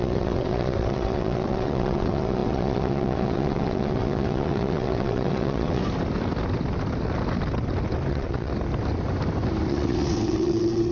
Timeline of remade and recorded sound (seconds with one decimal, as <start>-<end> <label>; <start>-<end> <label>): 0.0-5.8 remade; 5.8-8.1 recorded; 8.1-8.5 remade; 8.5-9.7 recorded; 9.7-10.9 remade

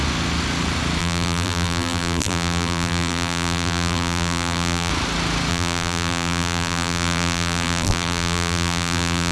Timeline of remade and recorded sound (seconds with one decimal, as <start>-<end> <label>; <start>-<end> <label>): 0.0-1.0 recorded; 1.0-4.9 remade; 4.9-5.5 recorded; 5.5-9.3 remade

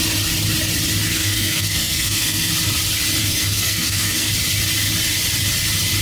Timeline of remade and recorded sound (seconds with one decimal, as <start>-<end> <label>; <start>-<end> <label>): 0.0-1.1 recorded; 1.1-2.5 remade; 2.5-3.2 recorded; 3.2-4.3 remade; 4.3-6.0 recorded